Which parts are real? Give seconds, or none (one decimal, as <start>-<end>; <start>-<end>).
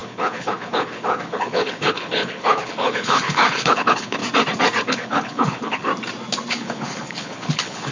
4.2-4.9; 5.9-6.5